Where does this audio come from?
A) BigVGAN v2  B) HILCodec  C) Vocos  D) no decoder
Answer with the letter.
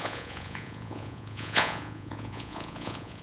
C